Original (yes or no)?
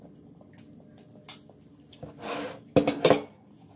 yes